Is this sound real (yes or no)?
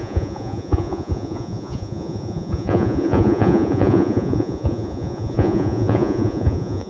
no